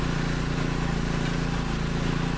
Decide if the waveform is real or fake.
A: real